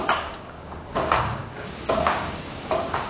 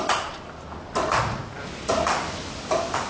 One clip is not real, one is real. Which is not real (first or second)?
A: first